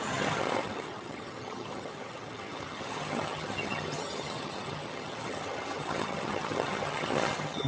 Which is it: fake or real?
fake